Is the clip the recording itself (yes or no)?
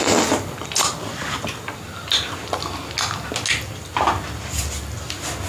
yes